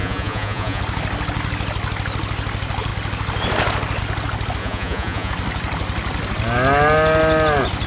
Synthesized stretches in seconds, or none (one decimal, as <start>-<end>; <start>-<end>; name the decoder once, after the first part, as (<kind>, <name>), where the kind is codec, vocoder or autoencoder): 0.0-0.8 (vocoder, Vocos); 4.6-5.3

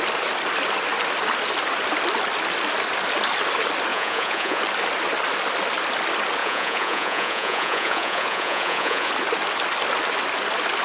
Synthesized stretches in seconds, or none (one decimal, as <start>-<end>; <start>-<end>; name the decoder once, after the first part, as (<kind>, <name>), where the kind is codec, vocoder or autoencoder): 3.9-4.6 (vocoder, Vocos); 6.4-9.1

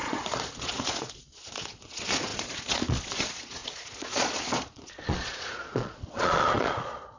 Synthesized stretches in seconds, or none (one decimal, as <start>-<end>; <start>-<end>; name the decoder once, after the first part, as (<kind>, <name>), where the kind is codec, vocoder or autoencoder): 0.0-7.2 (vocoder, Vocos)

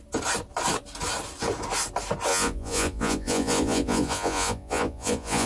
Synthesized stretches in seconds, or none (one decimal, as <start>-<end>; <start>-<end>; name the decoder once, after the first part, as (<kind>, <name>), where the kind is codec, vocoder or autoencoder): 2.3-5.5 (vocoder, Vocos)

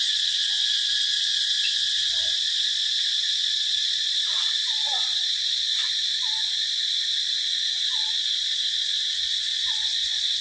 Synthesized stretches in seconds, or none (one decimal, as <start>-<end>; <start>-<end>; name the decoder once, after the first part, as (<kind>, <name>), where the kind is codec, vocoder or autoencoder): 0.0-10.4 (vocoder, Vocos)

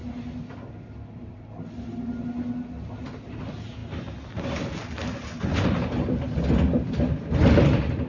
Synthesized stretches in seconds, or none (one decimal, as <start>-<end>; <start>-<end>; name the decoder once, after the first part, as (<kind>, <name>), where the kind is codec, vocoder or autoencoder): none

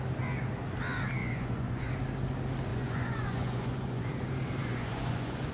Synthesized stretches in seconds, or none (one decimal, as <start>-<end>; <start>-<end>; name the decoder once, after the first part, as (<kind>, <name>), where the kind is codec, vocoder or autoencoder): 1.2-1.9 (vocoder, Vocos); 2.7-4.1; 4.6-5.5